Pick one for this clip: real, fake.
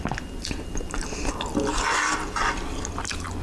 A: real